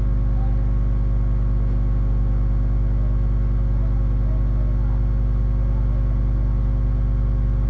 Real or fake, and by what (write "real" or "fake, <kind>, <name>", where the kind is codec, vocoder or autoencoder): real